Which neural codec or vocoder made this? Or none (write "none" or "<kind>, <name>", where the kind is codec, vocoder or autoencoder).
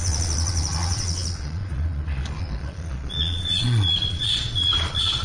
vocoder, Vocos